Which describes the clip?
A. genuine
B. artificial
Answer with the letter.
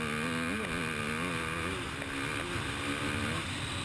A